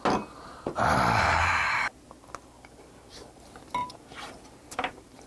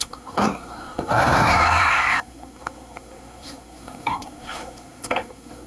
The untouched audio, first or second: first